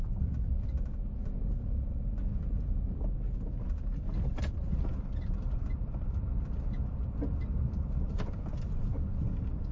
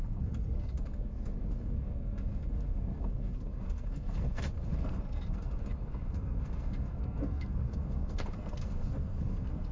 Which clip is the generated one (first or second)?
second